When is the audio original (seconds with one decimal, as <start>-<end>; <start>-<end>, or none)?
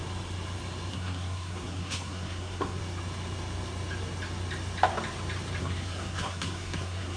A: 0.0-0.9; 2.8-5.6